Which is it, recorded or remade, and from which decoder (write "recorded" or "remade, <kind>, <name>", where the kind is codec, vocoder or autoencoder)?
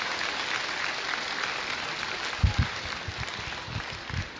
recorded